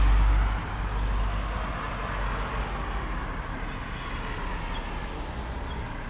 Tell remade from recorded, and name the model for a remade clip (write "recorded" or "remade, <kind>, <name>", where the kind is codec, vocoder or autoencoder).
recorded